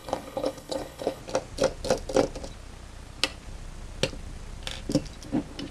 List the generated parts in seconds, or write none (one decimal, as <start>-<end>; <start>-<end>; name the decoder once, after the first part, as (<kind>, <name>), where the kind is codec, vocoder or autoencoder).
0.0-1.2 (codec, HILCodec)